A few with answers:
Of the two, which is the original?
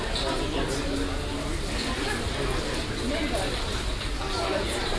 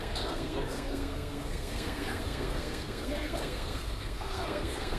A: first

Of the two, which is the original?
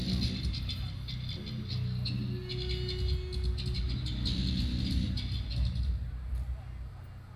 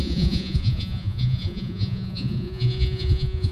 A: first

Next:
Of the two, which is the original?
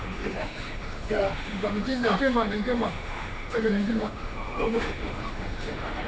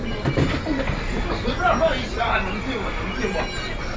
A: second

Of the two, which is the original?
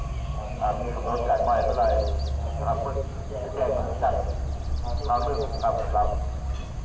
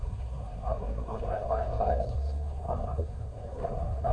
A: first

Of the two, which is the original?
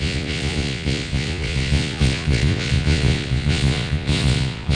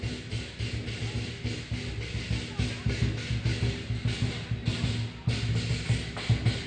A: second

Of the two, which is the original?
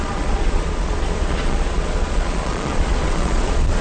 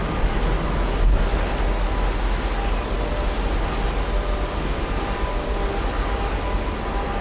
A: second